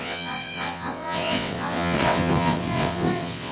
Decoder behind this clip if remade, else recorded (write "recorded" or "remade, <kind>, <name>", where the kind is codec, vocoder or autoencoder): remade, vocoder, WaveNeXt